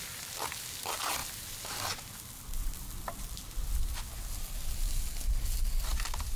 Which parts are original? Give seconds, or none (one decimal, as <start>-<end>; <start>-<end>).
0.0-1.2; 3.6-6.4